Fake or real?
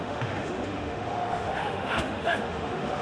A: fake